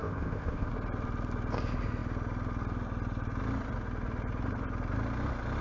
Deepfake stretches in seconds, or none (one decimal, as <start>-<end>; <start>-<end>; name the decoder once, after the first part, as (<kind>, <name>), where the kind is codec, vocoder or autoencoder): 0.0-0.7 (codec, ZipCodec)